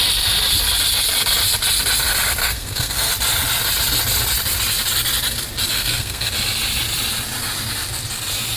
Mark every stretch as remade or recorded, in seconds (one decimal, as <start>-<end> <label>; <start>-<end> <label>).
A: 0.0-2.4 recorded; 2.4-3.1 remade; 3.1-5.7 recorded; 5.7-6.3 remade; 6.3-8.6 recorded